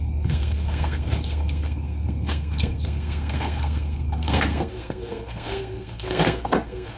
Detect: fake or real fake